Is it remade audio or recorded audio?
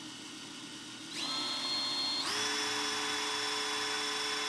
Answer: recorded